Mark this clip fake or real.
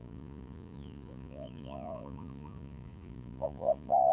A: fake